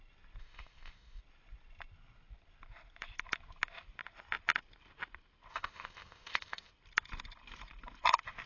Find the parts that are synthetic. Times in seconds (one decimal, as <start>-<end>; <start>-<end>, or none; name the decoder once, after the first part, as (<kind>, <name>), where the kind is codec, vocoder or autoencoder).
0.4-1.2 (codec, ZipCodec); 5.5-6.7

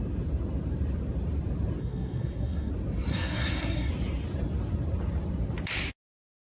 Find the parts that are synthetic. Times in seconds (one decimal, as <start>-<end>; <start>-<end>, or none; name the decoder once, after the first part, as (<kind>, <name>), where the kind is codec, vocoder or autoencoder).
1.8-2.7 (codec, SNAC); 3.1-3.9

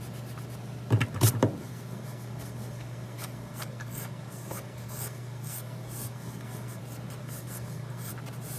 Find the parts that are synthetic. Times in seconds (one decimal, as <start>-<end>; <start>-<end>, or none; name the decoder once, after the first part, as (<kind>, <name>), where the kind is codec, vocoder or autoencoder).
1.6-6.8 (codec, SNAC); 7.2-8.1

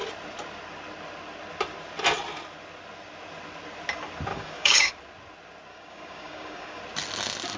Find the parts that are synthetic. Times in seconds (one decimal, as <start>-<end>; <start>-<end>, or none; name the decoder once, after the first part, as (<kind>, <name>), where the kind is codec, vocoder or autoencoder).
4.3-4.9 (codec, DAC); 5.7-6.8

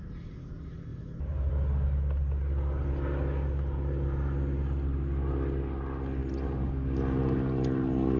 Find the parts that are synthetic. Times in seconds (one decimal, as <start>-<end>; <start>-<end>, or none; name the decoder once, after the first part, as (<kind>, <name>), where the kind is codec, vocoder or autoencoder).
0.9-1.5 (vocoder, BigVGAN v2)

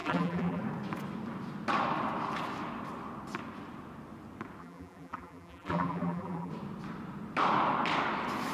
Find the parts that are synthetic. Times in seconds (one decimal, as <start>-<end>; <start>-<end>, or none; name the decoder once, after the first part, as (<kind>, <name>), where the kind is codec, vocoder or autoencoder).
0.0-0.6 (vocoder, BigVGAN v2); 4.6-6.5